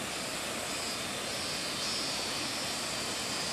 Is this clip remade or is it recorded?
recorded